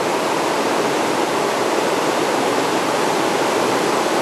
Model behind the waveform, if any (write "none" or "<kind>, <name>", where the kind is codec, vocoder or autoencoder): none